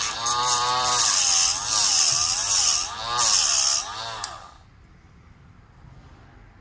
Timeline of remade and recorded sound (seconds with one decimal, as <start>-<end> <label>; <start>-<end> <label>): 0.0-2.8 remade; 2.8-3.8 recorded; 3.8-6.6 remade